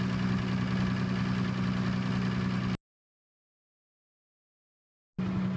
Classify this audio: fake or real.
real